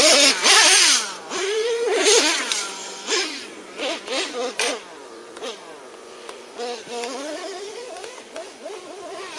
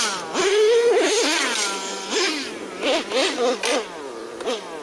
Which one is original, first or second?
second